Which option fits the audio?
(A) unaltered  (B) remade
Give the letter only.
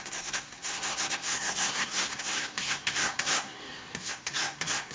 B